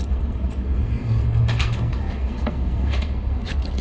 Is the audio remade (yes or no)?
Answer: yes